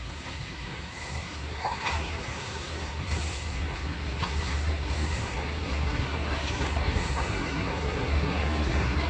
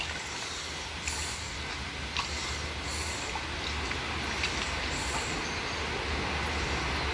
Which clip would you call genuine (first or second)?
second